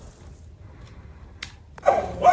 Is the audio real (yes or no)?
no